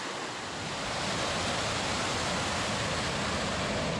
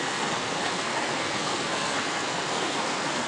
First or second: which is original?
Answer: first